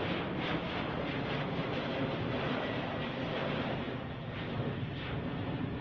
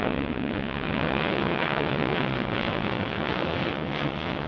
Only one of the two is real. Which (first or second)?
first